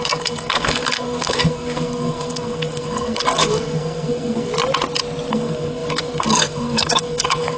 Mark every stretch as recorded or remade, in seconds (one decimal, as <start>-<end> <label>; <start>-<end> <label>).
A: 0.0-4.5 remade; 4.5-5.3 recorded; 5.3-7.6 remade